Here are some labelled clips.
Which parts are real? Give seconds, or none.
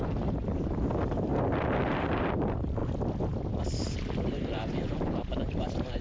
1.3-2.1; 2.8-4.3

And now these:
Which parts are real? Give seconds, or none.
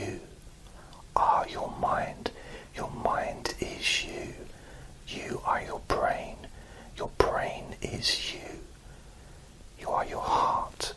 3.5-5.5